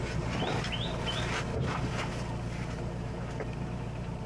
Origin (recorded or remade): recorded